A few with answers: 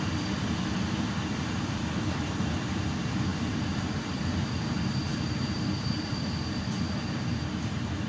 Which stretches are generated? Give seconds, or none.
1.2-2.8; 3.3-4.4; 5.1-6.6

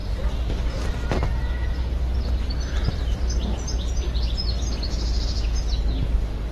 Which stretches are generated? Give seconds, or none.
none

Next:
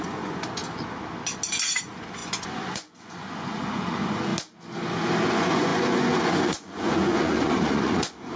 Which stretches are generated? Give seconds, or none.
0.0-0.6; 1.8-4.3; 5.3-8.4

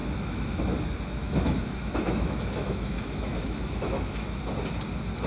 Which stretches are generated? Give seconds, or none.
0.0-0.6; 1.2-4.4

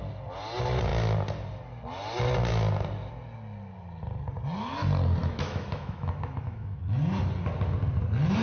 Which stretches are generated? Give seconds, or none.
5.2-6.8

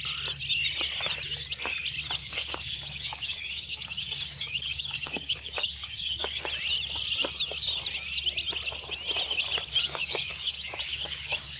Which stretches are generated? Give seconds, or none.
2.2-6.4; 9.7-11.6